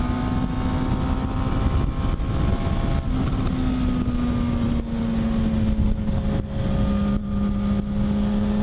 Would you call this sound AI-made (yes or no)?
no